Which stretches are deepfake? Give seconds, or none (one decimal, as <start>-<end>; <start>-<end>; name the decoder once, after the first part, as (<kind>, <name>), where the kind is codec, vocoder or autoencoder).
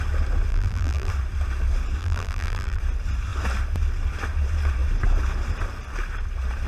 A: 0.5-1.1 (vocoder, BigVGAN v2); 2.0-2.8